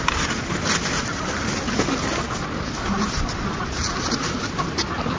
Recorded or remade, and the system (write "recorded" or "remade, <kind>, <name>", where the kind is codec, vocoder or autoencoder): remade, vocoder, BigVGAN v2